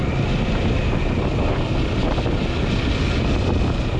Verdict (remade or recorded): recorded